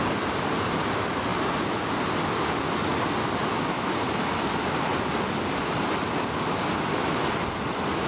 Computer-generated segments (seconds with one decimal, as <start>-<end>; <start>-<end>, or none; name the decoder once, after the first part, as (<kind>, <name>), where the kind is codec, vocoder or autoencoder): none